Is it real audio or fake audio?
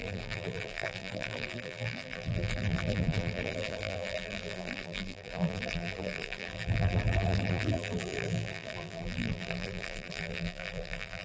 fake